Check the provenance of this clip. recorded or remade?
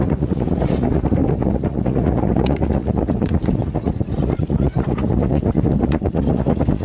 remade